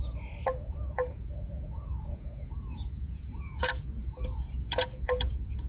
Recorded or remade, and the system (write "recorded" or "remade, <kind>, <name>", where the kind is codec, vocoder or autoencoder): remade, vocoder, Vocos